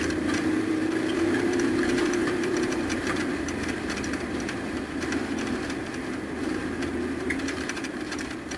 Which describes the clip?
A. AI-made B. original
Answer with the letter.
A